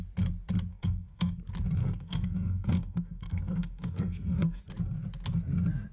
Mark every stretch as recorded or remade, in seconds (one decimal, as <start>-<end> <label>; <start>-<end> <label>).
0.0-0.7 recorded; 0.7-1.3 remade; 1.3-1.8 recorded; 1.8-4.6 remade; 4.6-5.9 recorded

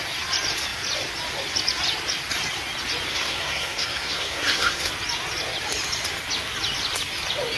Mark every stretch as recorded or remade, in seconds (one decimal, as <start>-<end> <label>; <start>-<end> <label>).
0.0-3.1 recorded; 3.1-4.9 remade; 4.9-7.6 recorded

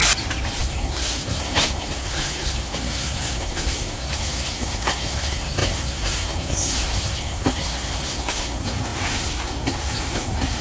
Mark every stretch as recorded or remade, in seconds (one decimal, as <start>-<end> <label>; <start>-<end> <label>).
0.0-0.6 recorded; 0.6-10.6 remade

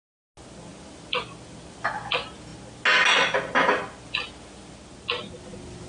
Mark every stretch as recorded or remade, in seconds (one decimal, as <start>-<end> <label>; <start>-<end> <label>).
0.0-5.9 recorded

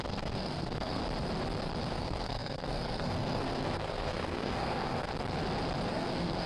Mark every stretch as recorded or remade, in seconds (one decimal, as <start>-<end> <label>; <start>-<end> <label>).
0.0-1.0 remade; 1.0-1.9 recorded; 1.9-5.1 remade; 5.1-5.9 recorded; 5.9-6.5 remade

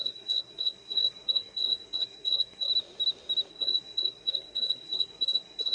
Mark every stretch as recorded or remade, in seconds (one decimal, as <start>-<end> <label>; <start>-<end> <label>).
0.0-2.7 remade; 2.7-3.5 recorded; 3.5-5.7 remade

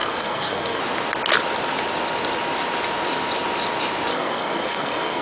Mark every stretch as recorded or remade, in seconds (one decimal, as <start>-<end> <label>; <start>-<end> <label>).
0.0-0.8 remade; 0.8-4.1 recorded; 4.1-5.2 remade

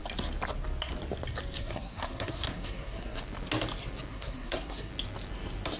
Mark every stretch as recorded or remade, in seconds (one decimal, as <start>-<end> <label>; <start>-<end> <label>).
0.0-1.6 recorded; 1.6-3.2 remade; 3.2-4.1 recorded; 4.1-4.9 remade; 4.9-5.8 recorded